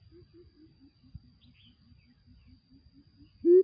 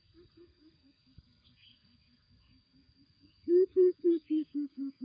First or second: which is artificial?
second